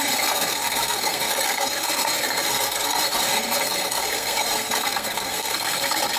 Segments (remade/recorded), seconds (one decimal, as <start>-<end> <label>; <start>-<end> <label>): 0.0-6.2 remade